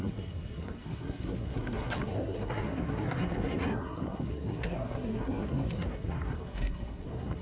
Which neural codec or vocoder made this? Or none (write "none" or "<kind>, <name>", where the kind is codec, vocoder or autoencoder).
codec, SNAC